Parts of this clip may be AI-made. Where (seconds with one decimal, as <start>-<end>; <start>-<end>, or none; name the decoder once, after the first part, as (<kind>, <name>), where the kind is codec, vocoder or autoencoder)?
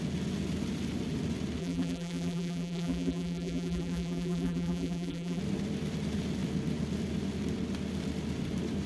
1.6-5.4 (vocoder, BigVGAN v2)